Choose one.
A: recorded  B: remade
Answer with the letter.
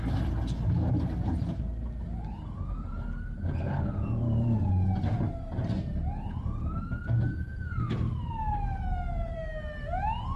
A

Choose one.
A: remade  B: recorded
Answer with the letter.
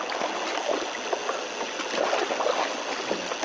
B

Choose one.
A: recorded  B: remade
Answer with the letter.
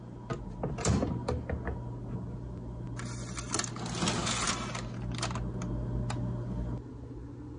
A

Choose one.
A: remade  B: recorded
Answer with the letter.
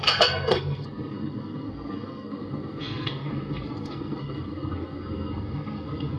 A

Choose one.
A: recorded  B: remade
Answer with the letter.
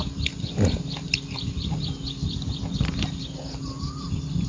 A